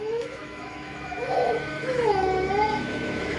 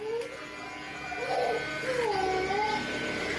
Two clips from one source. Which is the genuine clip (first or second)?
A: second